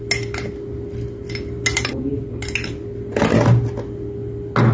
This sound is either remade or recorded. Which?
recorded